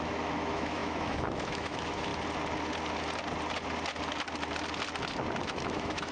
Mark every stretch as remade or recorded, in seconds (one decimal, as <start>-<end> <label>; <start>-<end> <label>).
0.0-2.1 remade; 2.1-5.4 recorded; 5.4-6.1 remade